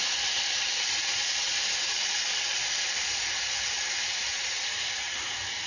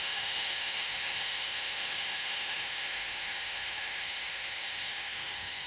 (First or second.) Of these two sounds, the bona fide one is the first